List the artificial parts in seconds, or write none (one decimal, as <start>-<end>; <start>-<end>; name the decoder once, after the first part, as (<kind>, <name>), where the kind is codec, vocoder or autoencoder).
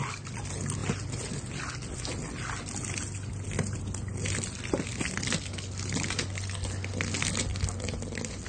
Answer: none